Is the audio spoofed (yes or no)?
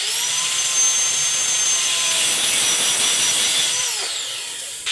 no